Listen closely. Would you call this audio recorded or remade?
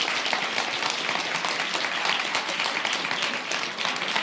recorded